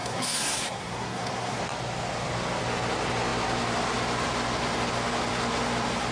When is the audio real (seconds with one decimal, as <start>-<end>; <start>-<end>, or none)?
1.6-6.1